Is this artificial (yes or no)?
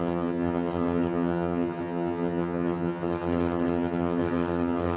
yes